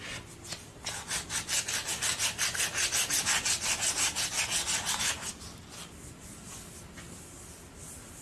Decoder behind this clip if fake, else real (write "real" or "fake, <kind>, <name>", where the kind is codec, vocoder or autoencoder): real